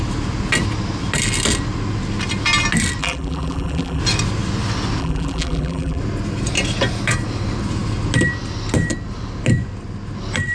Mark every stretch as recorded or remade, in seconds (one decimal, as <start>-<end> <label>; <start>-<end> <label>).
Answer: 0.0-3.0 recorded; 3.0-4.0 remade; 4.0-5.0 recorded; 5.0-6.0 remade; 6.0-10.5 recorded